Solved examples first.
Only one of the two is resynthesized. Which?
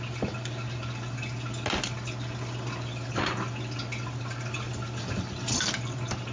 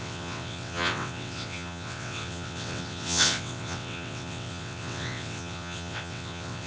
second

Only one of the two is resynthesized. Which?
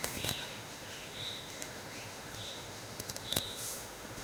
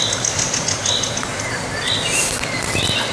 first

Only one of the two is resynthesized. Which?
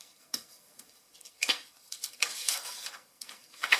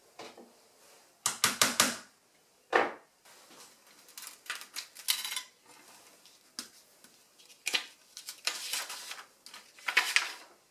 first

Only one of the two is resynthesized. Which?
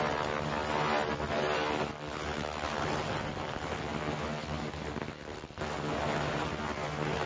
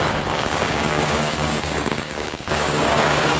second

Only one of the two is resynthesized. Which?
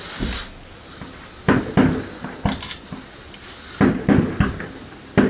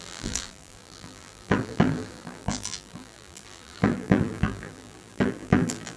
second